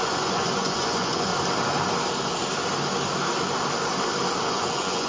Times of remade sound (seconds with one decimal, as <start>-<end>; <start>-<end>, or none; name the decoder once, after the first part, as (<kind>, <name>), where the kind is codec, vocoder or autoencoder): 0.0-1.3 (vocoder, Vocos); 4.4-5.1